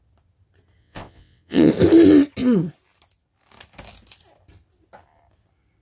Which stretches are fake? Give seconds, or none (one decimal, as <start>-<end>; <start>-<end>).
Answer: 0.8-1.7